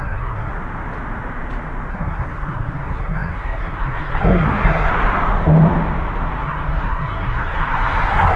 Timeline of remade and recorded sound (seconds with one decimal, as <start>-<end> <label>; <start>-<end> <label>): 0.0-0.5 remade; 0.5-1.9 recorded; 1.9-4.9 remade; 4.9-6.4 recorded; 6.4-8.4 remade